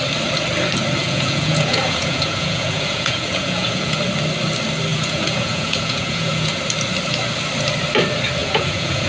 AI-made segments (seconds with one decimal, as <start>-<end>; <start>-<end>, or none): 1.0-4.0; 4.9-6.6; 8.4-9.1